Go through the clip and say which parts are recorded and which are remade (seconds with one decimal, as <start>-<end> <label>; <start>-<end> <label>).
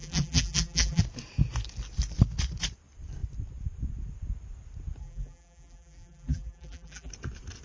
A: 0.0-1.0 remade; 1.0-5.0 recorded; 5.0-7.1 remade; 7.1-7.6 recorded